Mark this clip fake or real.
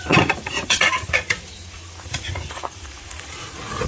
fake